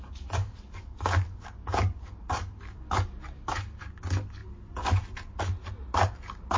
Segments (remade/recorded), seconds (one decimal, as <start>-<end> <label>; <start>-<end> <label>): 0.0-4.0 remade; 4.0-6.6 recorded